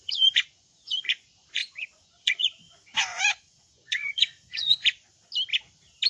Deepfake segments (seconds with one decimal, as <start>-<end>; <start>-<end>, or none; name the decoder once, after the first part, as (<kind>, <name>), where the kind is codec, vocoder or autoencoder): 0.0-4.8 (vocoder, Vocos)